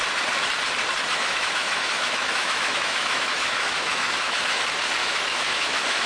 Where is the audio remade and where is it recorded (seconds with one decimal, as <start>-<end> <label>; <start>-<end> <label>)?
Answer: 0.0-1.1 recorded; 1.1-4.6 remade; 4.6-5.0 recorded; 5.0-6.1 remade